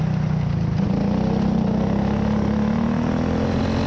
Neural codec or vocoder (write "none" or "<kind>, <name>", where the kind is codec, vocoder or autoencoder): none